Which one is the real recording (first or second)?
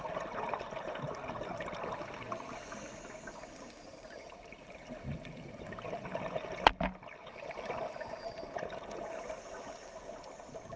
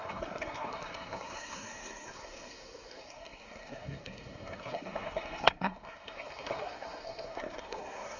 first